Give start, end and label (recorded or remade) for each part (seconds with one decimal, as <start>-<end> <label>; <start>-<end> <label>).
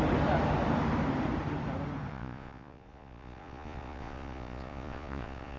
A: 0.0-2.1 recorded; 2.1-5.6 remade